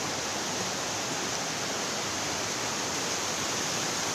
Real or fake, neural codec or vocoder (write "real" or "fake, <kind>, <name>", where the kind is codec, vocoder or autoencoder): real